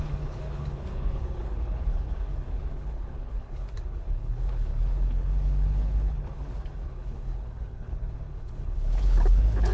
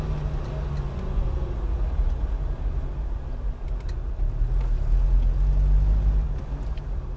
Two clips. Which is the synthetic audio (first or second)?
first